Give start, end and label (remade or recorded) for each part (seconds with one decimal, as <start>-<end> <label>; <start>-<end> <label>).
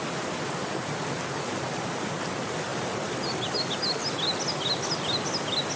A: 0.0-5.8 recorded